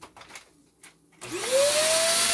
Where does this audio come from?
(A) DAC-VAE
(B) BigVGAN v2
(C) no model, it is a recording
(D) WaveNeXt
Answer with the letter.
C